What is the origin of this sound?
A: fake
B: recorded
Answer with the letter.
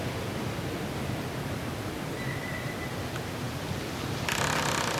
B